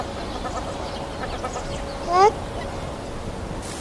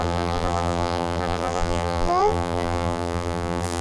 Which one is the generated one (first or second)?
second